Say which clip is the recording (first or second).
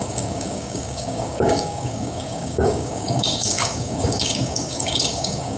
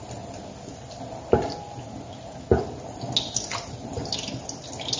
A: second